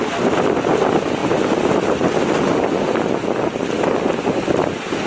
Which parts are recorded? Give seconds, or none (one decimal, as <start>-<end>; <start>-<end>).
0.0-5.1